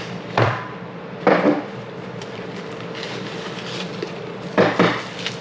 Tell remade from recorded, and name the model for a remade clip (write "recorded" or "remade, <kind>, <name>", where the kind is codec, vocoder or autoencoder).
remade, vocoder, BigVGAN v2